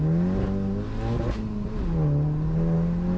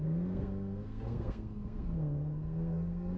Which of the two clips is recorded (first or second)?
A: first